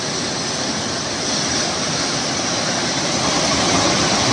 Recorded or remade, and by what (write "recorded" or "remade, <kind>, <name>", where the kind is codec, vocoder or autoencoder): recorded